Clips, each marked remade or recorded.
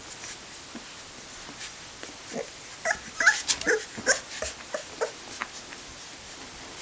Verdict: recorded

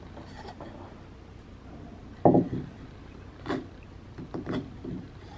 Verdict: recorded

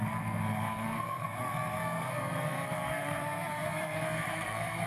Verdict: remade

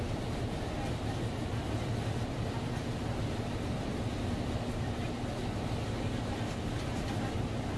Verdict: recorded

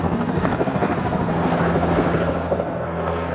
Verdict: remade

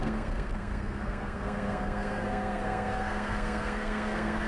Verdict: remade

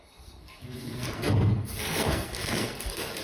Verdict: remade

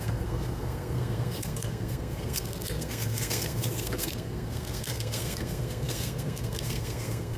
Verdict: remade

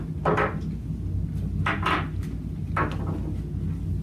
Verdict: recorded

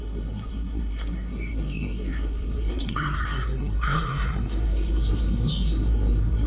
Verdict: remade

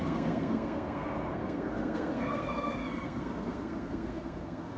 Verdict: remade